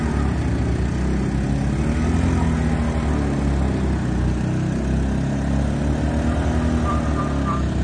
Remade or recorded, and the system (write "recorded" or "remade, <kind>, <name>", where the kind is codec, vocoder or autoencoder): recorded